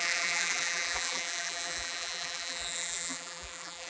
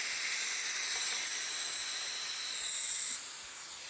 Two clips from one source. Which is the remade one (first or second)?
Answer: first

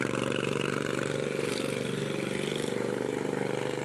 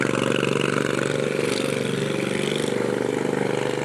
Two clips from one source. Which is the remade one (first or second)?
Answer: first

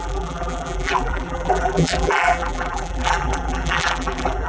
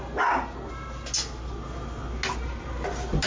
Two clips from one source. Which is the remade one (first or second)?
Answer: first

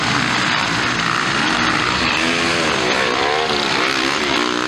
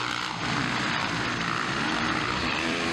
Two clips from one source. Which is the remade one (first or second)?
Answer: second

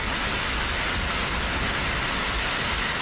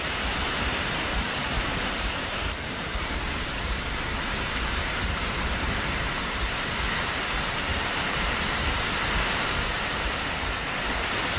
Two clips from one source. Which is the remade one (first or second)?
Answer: second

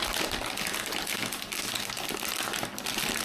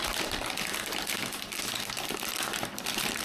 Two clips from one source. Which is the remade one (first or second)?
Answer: second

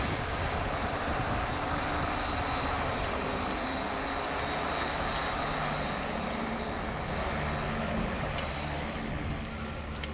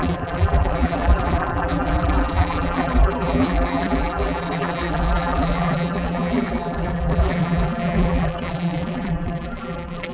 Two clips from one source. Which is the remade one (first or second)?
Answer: second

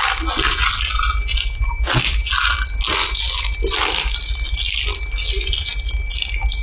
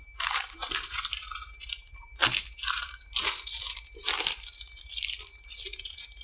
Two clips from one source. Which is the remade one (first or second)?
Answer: second